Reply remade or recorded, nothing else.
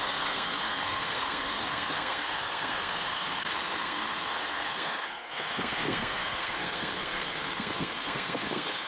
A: remade